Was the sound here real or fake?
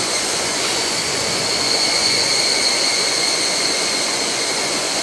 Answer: fake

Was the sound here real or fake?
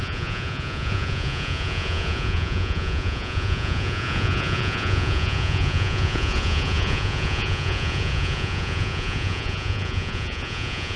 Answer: fake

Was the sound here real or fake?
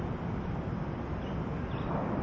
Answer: real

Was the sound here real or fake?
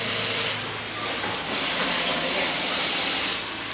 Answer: real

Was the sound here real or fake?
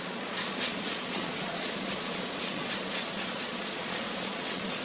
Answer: fake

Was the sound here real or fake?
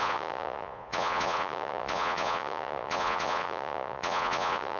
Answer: fake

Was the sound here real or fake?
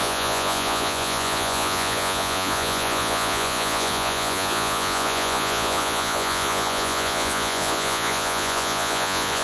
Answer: fake